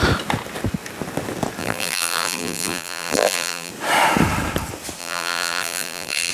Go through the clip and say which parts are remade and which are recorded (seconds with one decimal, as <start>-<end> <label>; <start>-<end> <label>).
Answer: 0.0-1.6 recorded; 1.6-3.7 remade; 3.7-5.0 recorded; 5.0-6.3 remade